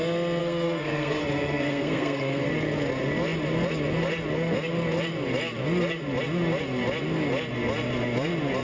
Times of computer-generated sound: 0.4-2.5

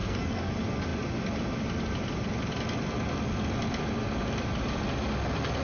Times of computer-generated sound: 0.0-0.5

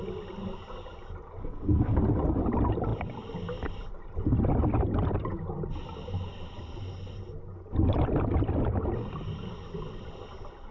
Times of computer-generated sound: 1.4-2.0

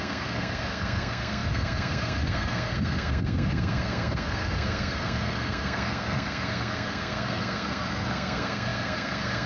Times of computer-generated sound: 0.0-9.5